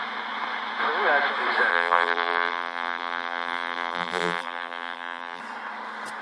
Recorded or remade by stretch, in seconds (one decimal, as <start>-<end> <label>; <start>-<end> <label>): 0.0-1.7 recorded; 1.7-5.4 remade; 5.4-6.2 recorded